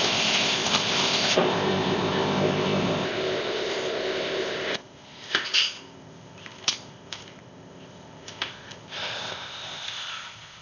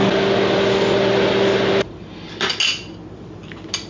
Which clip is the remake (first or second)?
first